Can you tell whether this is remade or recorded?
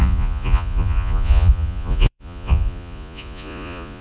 remade